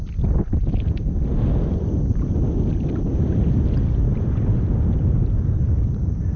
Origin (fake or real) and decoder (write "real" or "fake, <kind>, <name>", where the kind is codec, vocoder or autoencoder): fake, vocoder, BigVGAN v2